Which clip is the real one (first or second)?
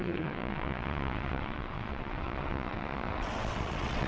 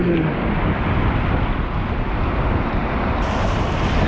second